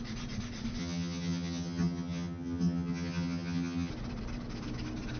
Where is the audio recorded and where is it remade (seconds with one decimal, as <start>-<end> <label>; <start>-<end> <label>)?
0.0-0.8 recorded; 0.8-3.9 remade; 3.9-5.2 recorded

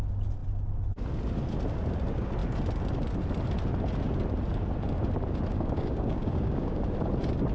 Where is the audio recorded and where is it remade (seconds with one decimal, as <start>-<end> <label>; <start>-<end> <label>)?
0.0-5.5 recorded; 5.5-6.8 remade; 6.8-7.5 recorded

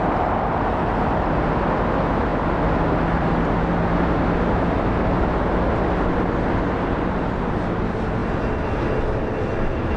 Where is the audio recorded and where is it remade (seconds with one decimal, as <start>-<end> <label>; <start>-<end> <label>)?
0.0-10.0 recorded

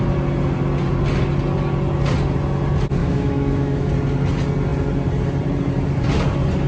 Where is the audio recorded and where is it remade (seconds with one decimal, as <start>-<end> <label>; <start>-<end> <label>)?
0.0-3.0 recorded; 3.0-3.9 remade; 3.9-6.7 recorded

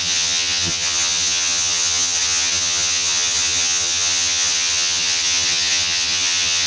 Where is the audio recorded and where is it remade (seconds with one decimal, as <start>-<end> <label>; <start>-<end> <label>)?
0.0-6.7 remade

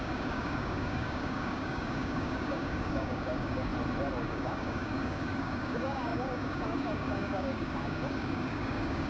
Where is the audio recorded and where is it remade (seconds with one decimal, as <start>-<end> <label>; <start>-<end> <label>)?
0.0-3.7 remade; 3.7-4.2 recorded; 4.2-9.1 remade

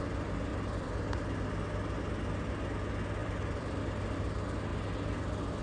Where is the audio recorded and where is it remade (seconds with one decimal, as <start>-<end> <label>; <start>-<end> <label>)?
0.0-0.5 recorded; 0.5-1.2 remade; 1.2-3.2 recorded; 3.2-4.2 remade; 4.2-5.6 recorded

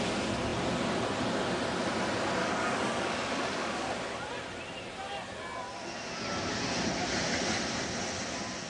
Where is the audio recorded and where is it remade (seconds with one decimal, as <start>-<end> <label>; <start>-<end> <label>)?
0.0-2.4 recorded; 2.4-3.9 remade; 3.9-8.7 recorded